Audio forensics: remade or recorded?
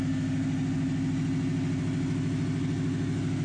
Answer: recorded